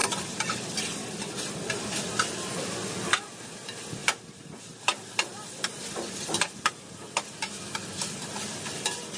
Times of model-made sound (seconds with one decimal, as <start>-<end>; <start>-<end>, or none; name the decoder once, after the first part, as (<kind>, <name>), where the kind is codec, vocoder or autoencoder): none